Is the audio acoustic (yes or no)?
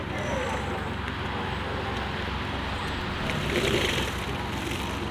yes